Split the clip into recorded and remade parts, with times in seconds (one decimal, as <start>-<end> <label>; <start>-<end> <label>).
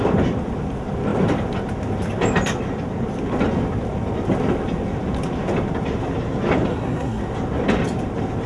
0.0-6.7 recorded; 6.7-7.2 remade; 7.2-8.5 recorded